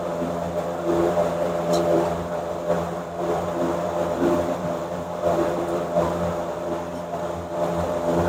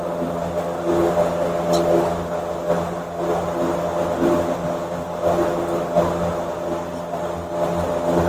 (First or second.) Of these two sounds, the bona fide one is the second